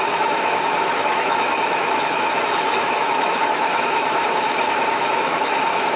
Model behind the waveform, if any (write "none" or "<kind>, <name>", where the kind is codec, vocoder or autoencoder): autoencoder, DAC-VAE